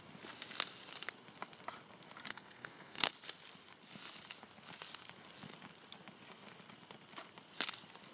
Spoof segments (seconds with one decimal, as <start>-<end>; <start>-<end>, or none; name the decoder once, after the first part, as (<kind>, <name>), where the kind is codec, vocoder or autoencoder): 2.3-3.1 (codec, SNAC)

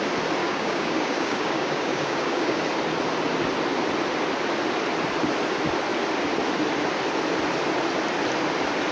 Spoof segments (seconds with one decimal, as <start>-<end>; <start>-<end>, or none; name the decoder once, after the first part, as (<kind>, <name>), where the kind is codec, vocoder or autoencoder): 0.4-2.6 (codec, DAC)